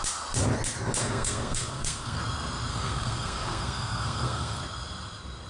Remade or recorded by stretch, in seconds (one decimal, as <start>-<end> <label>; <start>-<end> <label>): 0.0-1.0 recorded; 1.0-2.2 remade; 2.2-2.7 recorded; 2.7-4.6 remade; 4.6-5.5 recorded